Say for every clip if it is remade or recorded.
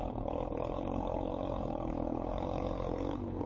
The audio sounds remade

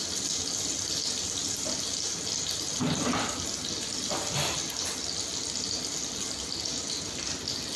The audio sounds recorded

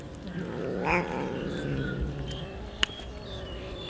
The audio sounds recorded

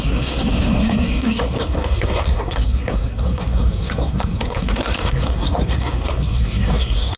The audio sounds remade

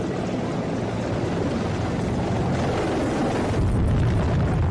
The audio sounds recorded